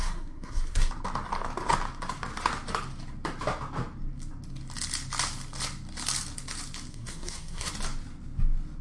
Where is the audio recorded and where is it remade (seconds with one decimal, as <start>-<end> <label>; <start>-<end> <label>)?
0.0-0.9 remade; 0.9-6.9 recorded; 6.9-7.7 remade; 7.7-8.8 recorded

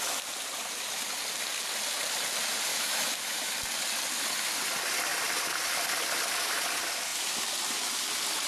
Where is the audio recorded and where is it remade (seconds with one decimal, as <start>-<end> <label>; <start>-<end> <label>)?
0.0-2.7 recorded; 2.7-3.5 remade; 3.5-8.5 recorded

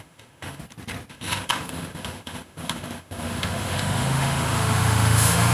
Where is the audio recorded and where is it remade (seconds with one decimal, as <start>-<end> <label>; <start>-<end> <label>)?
0.0-0.6 remade; 0.6-1.1 recorded; 1.1-5.5 remade

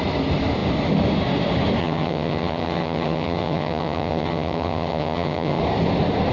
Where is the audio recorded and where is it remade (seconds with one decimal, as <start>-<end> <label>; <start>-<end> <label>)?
0.0-1.8 recorded; 1.8-5.6 remade; 5.6-6.3 recorded

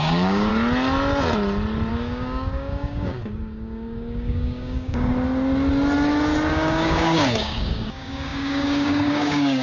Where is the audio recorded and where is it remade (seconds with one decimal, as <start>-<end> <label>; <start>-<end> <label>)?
0.0-0.5 remade; 0.5-1.9 recorded; 1.9-5.1 remade; 5.1-6.5 recorded; 6.5-9.6 remade

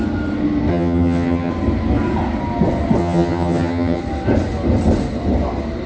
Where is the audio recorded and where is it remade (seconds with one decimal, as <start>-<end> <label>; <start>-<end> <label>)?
0.0-0.7 recorded; 0.7-1.5 remade; 1.5-3.0 recorded; 3.0-4.0 remade; 4.0-5.9 recorded

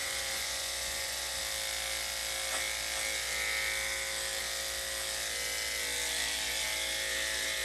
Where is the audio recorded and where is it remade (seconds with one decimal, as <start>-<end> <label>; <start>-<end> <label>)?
0.0-1.4 remade; 1.4-7.6 recorded